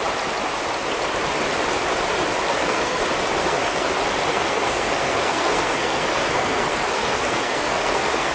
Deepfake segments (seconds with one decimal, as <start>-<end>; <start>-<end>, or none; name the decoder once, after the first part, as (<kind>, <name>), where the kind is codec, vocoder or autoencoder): 2.5-3.0 (codec, SNAC); 3.4-3.9; 4.3-8.3